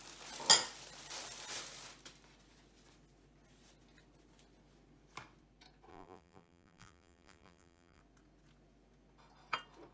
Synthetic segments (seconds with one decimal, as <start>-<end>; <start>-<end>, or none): 5.9-8.0